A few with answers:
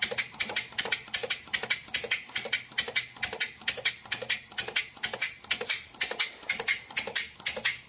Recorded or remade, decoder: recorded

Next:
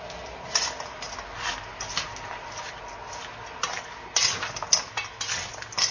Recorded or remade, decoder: recorded